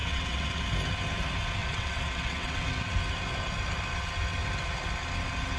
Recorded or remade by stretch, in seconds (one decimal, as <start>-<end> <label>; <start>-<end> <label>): 0.0-0.6 remade; 0.6-1.6 recorded; 1.6-2.9 remade; 2.9-5.6 recorded